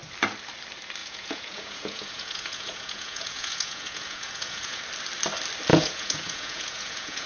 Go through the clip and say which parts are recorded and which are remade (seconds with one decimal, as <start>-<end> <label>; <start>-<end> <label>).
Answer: 0.0-1.0 recorded; 1.0-4.8 remade; 4.8-5.7 recorded; 5.7-7.3 remade